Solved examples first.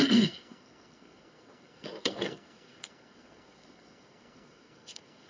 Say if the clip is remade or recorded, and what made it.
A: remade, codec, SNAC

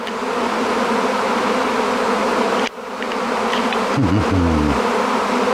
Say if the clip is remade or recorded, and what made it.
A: recorded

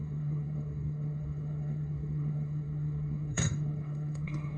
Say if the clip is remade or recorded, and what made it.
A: remade, codec, SNAC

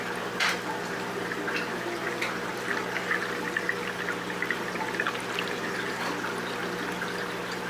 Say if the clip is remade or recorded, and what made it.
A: recorded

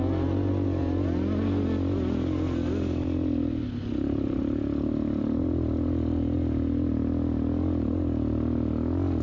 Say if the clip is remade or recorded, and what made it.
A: recorded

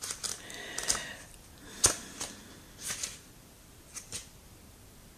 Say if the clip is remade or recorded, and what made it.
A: recorded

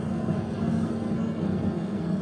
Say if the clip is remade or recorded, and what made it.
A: remade, codec, SNAC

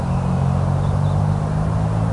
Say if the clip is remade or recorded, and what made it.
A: recorded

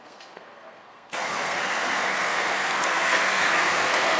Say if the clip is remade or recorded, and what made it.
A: remade, codec, SNAC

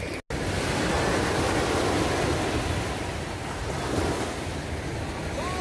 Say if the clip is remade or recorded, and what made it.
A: recorded